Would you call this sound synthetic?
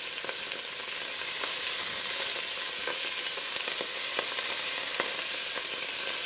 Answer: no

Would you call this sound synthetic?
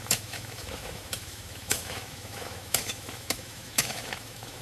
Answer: yes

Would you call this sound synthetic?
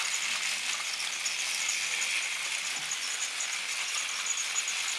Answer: no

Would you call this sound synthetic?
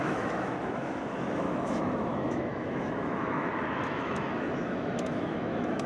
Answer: yes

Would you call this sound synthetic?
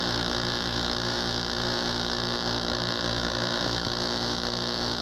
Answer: yes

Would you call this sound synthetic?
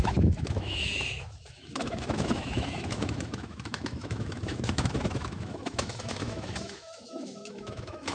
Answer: yes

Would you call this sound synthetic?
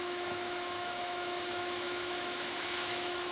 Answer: yes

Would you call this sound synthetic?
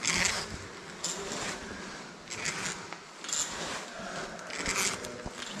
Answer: no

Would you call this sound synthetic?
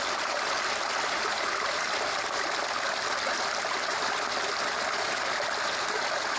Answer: no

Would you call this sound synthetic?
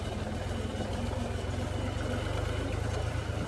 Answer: no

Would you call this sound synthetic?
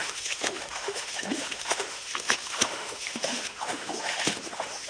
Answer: yes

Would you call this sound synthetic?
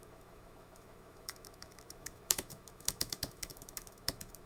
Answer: yes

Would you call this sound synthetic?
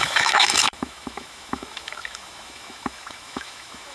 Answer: yes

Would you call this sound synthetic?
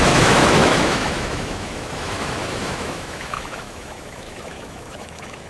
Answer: yes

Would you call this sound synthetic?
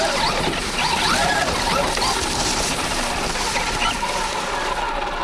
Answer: no